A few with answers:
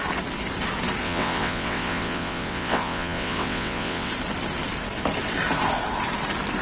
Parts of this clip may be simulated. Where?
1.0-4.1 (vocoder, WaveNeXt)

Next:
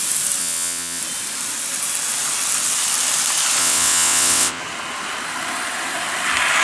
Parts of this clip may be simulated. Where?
0.4-1.0 (vocoder, WaveNeXt); 3.6-4.6

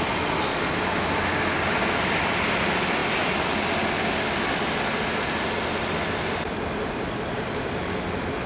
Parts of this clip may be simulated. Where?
none

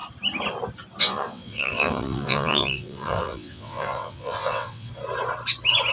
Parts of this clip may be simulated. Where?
1.0-4.9 (vocoder, WaveNeXt)

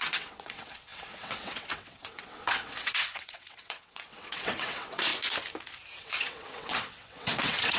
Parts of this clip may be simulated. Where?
0.0-5.1 (vocoder, WaveNeXt); 6.0-7.8

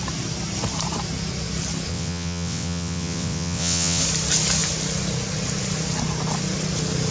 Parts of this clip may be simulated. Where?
1.9-4.0 (vocoder, WaveNeXt)

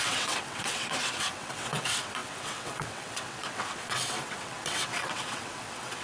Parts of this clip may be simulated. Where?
0.0-6.0 (vocoder, WaveNeXt)